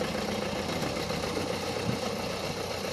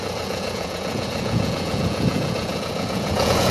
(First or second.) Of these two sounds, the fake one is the second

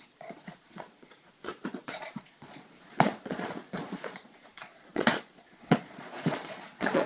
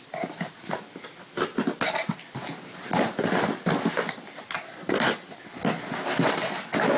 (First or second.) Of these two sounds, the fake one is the first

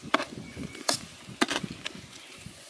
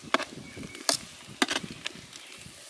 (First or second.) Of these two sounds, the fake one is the first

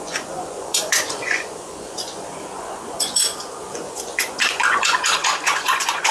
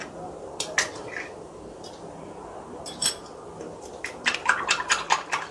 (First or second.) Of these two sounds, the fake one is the first